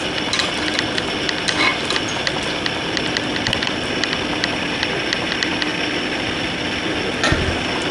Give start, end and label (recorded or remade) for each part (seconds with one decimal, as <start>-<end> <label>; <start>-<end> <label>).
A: 0.0-7.9 recorded